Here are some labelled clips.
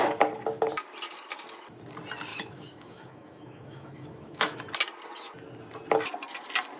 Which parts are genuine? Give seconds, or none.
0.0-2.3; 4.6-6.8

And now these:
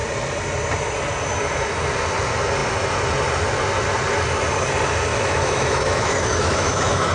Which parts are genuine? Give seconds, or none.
0.0-5.1